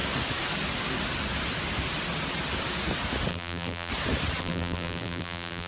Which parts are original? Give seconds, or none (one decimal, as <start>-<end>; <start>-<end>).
0.0-3.3; 3.9-4.4